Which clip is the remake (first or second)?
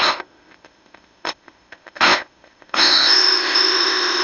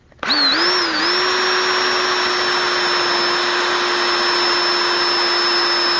first